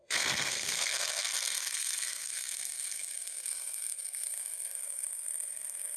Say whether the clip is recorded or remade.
remade